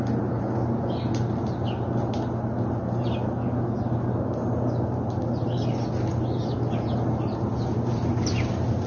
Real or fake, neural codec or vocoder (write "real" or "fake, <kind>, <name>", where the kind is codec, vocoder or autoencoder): real